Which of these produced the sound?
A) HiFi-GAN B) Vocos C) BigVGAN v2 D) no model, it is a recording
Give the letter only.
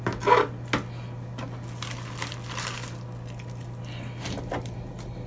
D